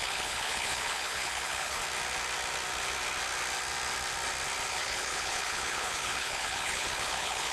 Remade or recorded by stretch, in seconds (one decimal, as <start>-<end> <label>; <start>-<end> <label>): 0.0-1.8 remade; 1.8-4.7 recorded; 4.7-7.5 remade